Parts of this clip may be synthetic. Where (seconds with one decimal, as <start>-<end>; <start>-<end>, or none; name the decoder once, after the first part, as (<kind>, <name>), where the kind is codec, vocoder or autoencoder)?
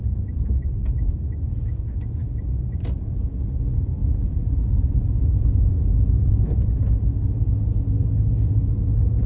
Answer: 4.0-6.7 (vocoder, Vocos)